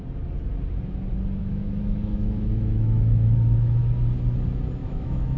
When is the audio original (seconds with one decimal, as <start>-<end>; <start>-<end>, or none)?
0.0-1.4; 3.8-4.8